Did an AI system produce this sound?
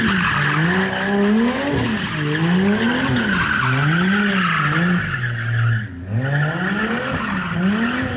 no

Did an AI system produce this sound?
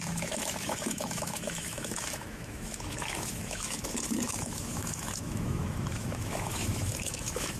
yes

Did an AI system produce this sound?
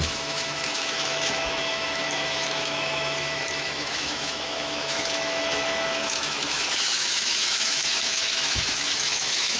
yes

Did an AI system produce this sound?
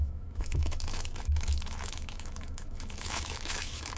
yes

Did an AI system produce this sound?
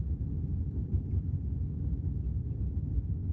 no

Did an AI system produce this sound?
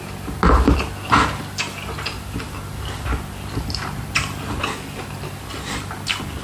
no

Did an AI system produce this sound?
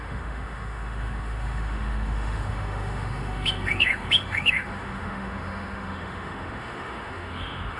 yes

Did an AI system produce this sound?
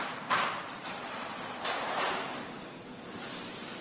no